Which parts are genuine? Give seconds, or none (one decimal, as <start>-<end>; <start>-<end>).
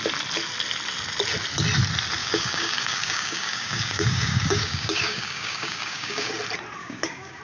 0.0-2.2; 6.3-6.8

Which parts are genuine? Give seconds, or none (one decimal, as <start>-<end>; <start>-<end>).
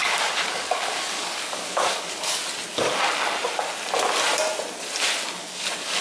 2.4-5.4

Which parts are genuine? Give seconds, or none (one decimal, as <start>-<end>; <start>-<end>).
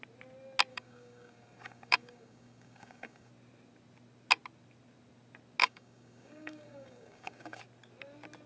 0.0-0.7; 3.3-5.6; 7.6-8.5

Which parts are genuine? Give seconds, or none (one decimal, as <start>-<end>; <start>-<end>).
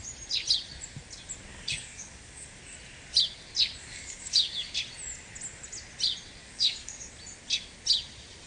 0.0-1.5; 2.6-3.8; 4.7-6.4; 7.1-8.5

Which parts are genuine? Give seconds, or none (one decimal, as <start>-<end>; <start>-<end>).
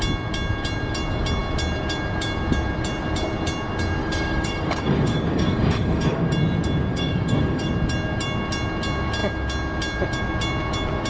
0.0-4.0; 6.3-6.9; 7.7-11.1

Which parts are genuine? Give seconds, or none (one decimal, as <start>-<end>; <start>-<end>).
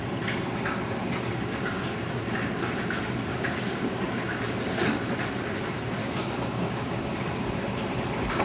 0.0-3.3; 4.4-6.0; 7.0-8.4